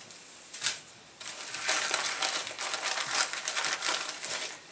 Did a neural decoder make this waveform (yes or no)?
no